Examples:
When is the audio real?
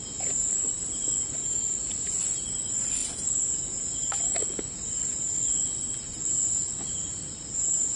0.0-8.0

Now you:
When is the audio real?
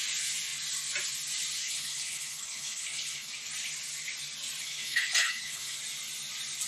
0.0-1.6; 3.3-4.6; 5.8-6.7